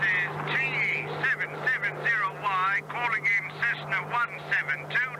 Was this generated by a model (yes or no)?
no